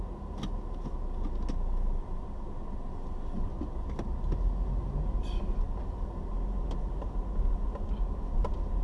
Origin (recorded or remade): recorded